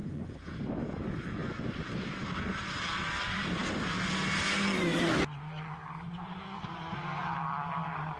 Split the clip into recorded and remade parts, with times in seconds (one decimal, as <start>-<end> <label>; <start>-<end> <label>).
0.0-0.6 remade; 0.6-8.2 recorded